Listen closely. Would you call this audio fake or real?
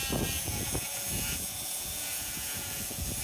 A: fake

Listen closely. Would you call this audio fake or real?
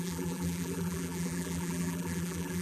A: fake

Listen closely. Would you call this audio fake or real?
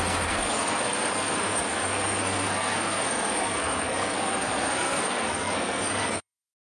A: fake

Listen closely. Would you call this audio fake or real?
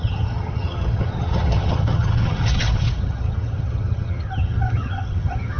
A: fake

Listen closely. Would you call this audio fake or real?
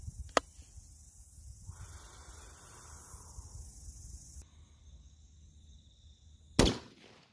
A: real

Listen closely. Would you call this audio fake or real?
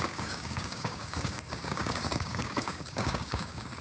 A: fake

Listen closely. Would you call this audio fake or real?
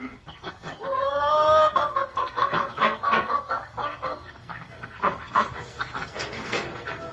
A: fake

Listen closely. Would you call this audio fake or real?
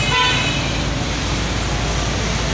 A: real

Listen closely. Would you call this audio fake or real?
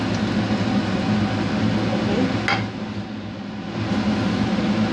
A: real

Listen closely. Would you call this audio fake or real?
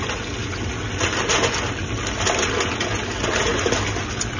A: real